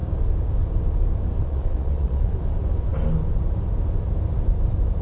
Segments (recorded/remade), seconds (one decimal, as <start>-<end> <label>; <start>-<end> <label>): 0.0-1.4 recorded; 1.4-2.3 remade; 2.3-5.0 recorded